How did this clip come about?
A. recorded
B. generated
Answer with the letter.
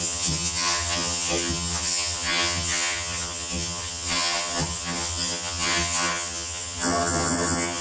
B